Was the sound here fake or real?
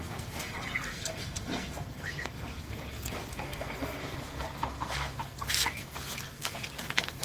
fake